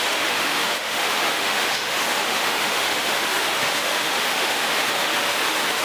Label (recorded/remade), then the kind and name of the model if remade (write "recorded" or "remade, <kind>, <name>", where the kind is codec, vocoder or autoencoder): remade, autoencoder, DAC-VAE